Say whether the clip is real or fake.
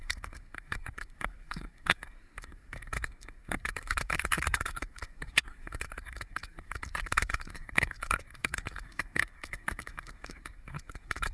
fake